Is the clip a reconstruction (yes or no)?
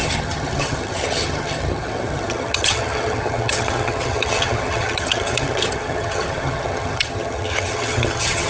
yes